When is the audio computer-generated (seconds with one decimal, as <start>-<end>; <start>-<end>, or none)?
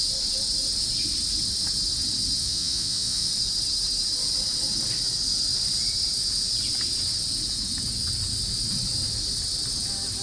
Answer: 2.4-3.3